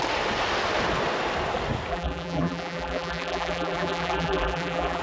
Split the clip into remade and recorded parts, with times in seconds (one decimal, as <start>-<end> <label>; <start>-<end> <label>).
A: 0.0-1.9 recorded; 1.9-5.0 remade